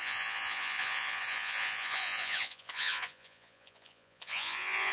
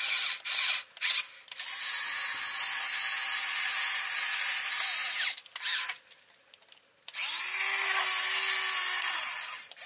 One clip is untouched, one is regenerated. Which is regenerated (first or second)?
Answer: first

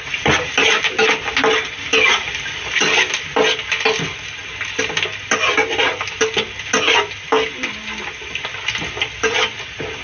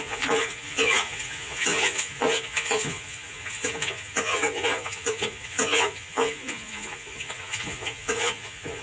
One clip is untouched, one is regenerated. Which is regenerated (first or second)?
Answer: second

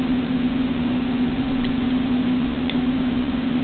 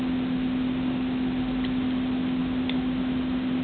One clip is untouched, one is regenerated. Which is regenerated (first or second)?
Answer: first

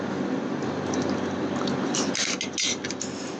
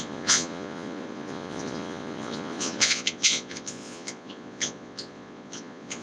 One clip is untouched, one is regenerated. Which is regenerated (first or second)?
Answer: second